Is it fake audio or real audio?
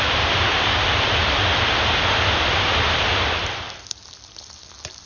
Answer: real